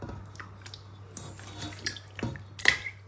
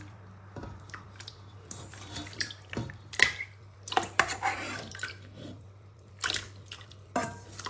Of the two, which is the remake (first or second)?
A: second